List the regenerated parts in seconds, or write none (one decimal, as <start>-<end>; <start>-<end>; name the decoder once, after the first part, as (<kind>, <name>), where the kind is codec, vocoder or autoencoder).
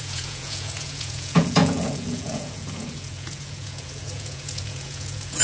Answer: 0.0-5.4 (vocoder, Vocos)